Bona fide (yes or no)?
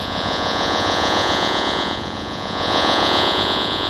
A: no